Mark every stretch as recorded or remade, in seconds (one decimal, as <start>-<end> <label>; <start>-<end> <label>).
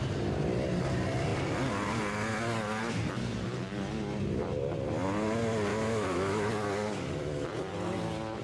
0.0-5.7 recorded; 5.7-6.5 remade; 6.5-8.4 recorded